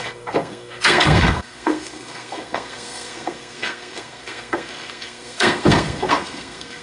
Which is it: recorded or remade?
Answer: remade